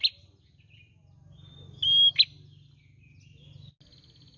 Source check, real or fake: real